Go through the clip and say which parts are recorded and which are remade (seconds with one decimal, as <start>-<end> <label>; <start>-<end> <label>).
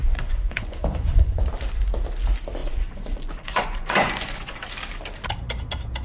0.0-1.4 remade; 1.4-2.6 recorded; 2.6-4.6 remade; 4.6-6.0 recorded